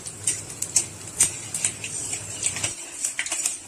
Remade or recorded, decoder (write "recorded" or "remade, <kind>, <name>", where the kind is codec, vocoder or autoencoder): recorded